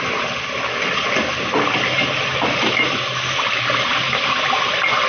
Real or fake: fake